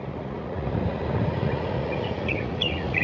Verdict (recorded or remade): remade